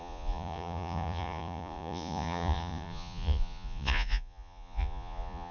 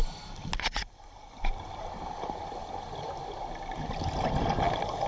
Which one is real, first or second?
second